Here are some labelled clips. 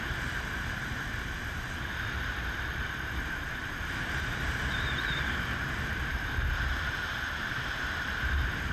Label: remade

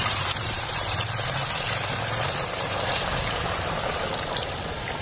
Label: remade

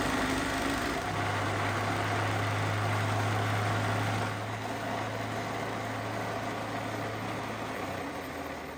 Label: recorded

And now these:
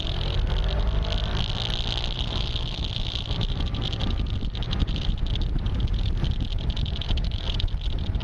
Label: recorded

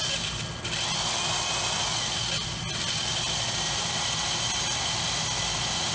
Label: recorded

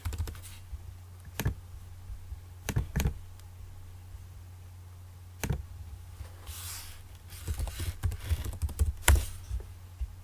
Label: recorded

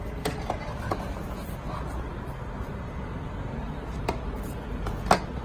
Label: recorded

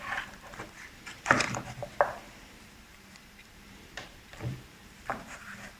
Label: remade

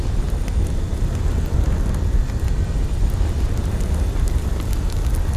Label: recorded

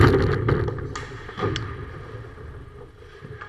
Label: recorded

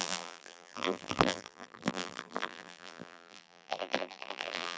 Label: remade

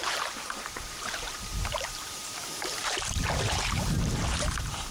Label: remade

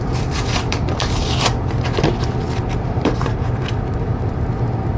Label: remade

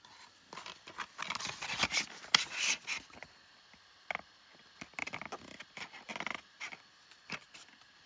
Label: recorded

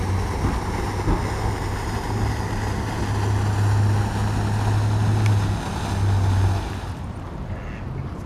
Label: recorded